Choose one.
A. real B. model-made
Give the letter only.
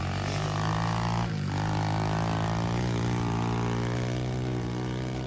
A